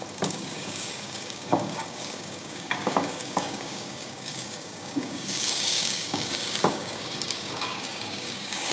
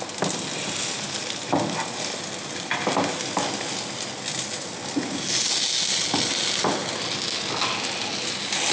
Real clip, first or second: second